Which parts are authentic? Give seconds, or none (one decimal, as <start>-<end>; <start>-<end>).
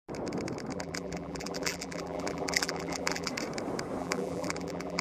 0.0-0.7; 3.3-4.0